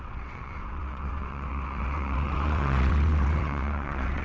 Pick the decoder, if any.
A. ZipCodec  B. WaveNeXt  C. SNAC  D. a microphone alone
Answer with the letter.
B